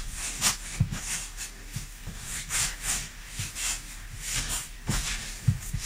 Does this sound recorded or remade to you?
remade